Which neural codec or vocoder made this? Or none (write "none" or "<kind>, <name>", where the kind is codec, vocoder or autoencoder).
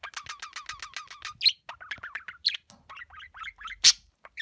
none